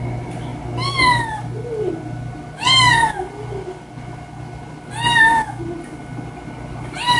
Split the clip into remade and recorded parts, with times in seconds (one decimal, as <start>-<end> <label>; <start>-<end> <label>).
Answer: 0.0-7.2 recorded